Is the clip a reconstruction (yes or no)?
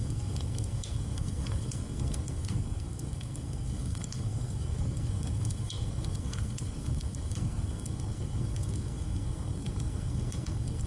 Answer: yes